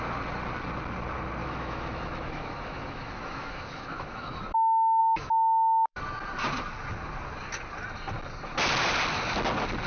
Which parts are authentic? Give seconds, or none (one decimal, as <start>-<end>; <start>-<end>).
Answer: 0.0-1.4; 4.4-5.0; 6.0-9.9